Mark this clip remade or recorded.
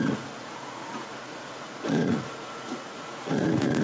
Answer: remade